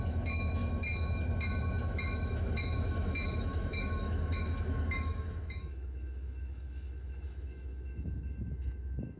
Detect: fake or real fake